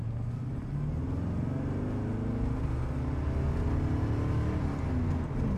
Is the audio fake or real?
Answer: real